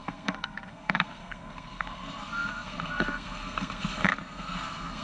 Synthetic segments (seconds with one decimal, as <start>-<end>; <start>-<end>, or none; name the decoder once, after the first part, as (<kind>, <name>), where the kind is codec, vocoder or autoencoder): 0.0-5.0 (codec, SNAC)

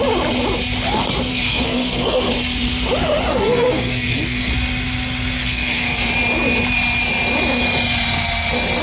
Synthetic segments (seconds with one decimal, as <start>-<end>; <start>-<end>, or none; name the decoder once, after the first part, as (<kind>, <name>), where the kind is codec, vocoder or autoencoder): 1.3-2.3 (codec, SNAC); 3.3-4.5; 5.4-6.1

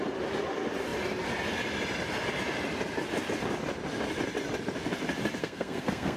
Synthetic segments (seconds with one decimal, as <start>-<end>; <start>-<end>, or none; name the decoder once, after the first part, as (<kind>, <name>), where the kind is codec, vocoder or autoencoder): 5.4-6.2 (codec, SNAC)

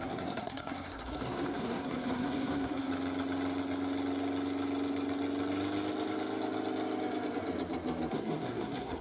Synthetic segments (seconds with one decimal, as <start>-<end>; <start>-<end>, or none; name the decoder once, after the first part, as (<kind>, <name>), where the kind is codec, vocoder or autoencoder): 0.0-2.9 (codec, SNAC); 8.1-9.0